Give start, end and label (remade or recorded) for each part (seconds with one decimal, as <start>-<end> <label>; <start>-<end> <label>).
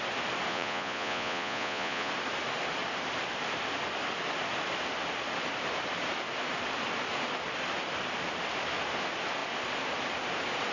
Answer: 0.0-0.5 recorded; 0.5-2.1 remade; 2.1-10.7 recorded